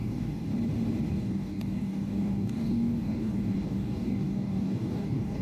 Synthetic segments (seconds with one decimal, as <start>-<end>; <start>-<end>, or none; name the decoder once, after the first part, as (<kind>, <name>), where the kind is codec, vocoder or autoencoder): 0.0-0.5 (codec, DAC); 1.1-5.4